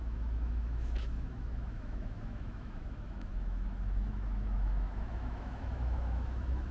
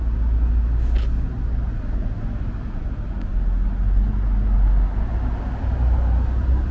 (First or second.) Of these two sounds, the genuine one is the second